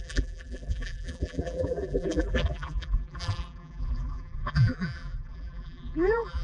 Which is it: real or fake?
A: fake